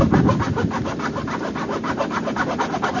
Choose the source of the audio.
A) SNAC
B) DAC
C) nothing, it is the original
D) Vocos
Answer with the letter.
C